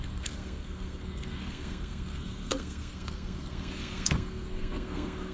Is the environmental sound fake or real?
fake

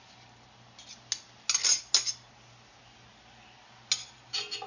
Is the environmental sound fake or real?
real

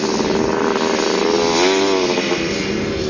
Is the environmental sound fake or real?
real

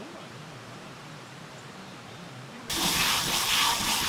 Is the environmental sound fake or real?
fake